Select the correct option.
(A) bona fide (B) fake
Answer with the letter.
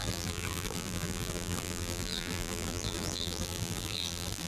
B